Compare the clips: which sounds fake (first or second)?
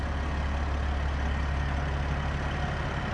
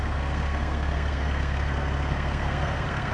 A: second